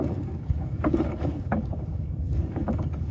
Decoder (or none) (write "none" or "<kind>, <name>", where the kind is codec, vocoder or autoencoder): codec, DAC